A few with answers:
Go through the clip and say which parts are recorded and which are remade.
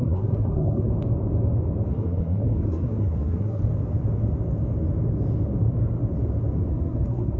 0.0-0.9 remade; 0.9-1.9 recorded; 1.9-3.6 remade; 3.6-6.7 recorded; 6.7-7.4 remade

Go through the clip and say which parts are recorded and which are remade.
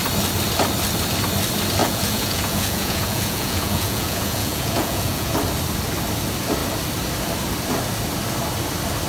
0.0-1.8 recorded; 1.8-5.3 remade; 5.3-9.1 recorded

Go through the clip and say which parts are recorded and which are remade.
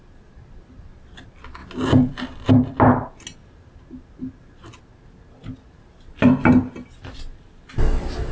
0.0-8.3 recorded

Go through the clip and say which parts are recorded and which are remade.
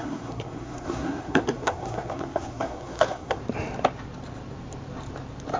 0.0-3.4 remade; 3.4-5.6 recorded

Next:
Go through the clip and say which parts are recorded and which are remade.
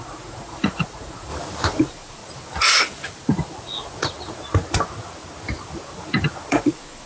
0.0-1.3 remade; 1.3-1.8 recorded; 1.8-2.2 remade; 2.2-6.5 recorded; 6.5-7.1 remade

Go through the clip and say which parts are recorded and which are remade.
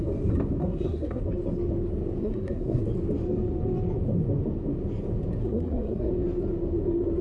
0.0-0.6 recorded; 0.6-1.2 remade; 1.2-2.2 recorded; 2.2-2.8 remade; 2.8-5.4 recorded; 5.4-6.1 remade; 6.1-7.2 recorded